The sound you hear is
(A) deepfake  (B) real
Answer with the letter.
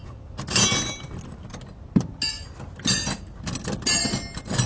B